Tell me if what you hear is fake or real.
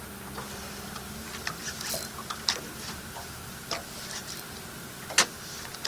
real